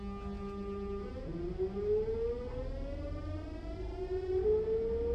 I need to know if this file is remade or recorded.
recorded